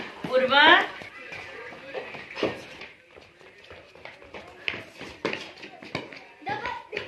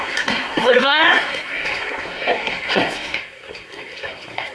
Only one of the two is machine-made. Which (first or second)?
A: second